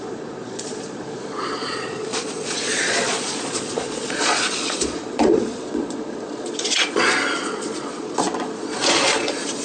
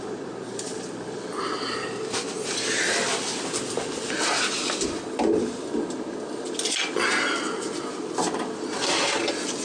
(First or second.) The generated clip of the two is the first